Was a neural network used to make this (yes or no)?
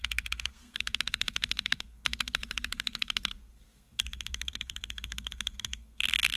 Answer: yes